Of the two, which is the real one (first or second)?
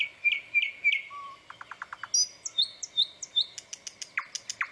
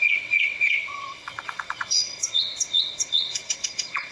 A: first